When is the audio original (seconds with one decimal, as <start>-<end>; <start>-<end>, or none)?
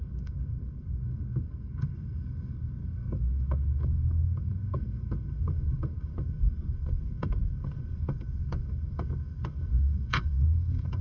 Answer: none